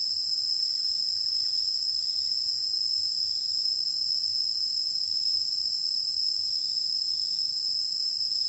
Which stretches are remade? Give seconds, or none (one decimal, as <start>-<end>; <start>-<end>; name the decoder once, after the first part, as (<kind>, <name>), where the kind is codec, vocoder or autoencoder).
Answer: none